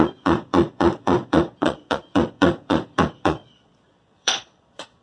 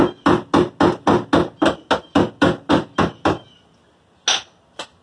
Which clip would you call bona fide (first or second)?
second